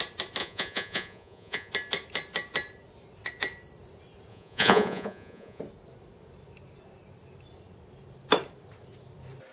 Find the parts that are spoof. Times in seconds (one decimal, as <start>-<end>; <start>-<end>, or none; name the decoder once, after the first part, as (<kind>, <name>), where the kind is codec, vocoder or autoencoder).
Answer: 0.4-1.7 (vocoder, Vocos); 4.3-5.6

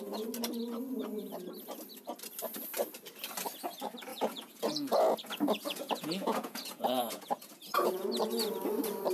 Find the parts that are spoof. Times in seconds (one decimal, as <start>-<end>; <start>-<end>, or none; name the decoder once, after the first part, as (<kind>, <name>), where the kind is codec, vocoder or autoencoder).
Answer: 4.1-8.1 (vocoder, Vocos)